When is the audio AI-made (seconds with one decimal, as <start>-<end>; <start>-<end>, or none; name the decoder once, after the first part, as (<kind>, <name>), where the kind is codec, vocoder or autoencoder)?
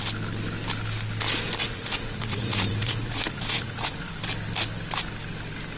1.6-4.2 (vocoder, Vocos)